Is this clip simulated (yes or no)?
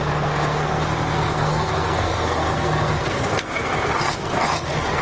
yes